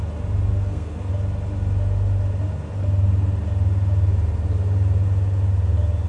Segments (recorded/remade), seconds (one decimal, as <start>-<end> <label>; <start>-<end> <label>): 0.0-0.5 recorded; 0.5-1.1 remade; 1.1-6.1 recorded